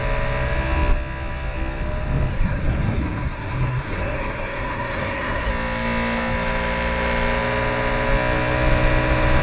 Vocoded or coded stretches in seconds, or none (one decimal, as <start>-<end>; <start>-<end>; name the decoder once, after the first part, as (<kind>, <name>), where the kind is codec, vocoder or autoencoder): 2.3-5.5 (codec, SNAC)